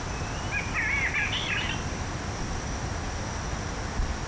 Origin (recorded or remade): recorded